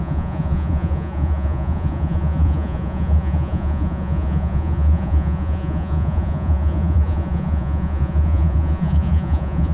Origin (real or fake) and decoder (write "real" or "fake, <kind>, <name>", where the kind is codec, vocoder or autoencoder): fake, vocoder, Vocos